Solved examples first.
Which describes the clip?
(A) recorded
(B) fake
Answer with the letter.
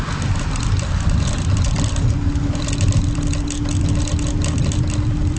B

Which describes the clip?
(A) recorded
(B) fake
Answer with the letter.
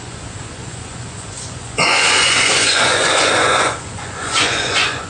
B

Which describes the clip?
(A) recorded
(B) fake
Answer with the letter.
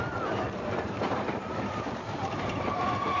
A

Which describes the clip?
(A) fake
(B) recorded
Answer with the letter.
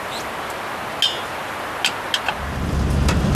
B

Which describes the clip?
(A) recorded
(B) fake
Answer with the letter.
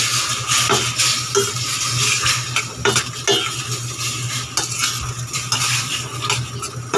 A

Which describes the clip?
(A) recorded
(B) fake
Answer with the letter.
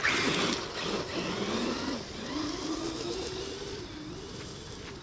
A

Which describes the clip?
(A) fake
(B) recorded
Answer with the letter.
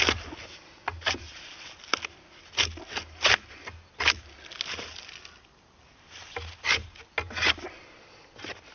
B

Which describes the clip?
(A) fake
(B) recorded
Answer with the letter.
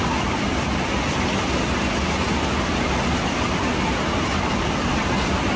B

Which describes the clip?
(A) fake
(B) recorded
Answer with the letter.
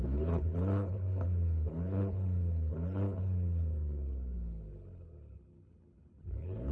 A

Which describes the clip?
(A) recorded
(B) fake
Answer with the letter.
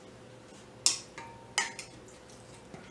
A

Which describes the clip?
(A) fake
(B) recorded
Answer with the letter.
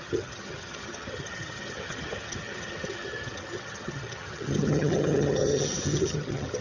A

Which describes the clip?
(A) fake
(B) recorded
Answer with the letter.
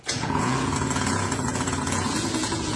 A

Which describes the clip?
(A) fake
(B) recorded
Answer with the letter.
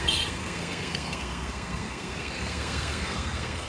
A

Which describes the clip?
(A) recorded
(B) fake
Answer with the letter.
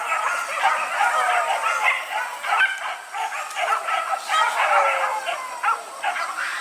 A